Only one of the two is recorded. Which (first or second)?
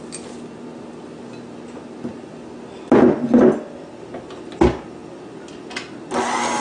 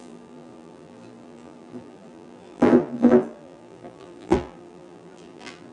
first